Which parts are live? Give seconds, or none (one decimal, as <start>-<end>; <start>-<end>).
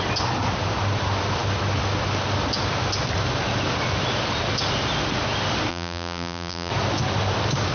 0.0-5.7; 6.7-7.7